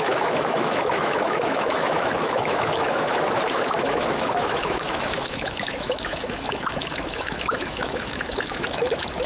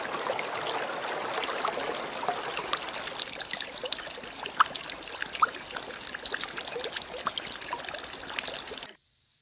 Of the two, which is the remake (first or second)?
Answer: first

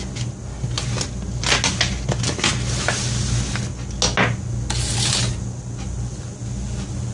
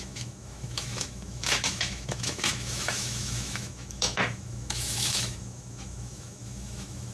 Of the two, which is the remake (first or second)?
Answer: second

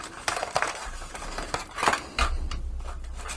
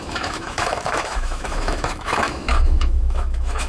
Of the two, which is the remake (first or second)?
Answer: second